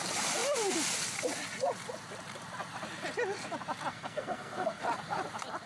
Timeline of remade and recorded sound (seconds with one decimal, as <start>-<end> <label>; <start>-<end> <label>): 0.0-3.9 recorded; 3.9-4.8 remade; 4.8-5.7 recorded